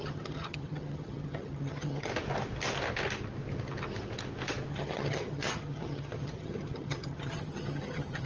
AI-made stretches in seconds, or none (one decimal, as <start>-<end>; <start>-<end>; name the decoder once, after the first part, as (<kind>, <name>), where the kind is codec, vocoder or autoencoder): 0.0-2.1 (vocoder, HiFi-GAN); 4.7-8.3